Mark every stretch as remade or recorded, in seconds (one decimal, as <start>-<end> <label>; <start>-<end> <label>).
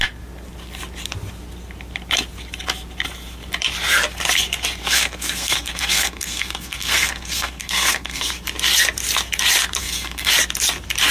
0.0-4.8 recorded; 4.8-8.3 remade; 8.3-9.8 recorded; 9.8-10.3 remade; 10.3-11.1 recorded